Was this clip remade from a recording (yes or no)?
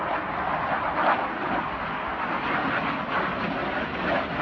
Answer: no